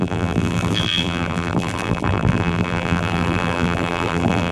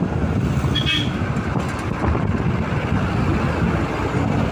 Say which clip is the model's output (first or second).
first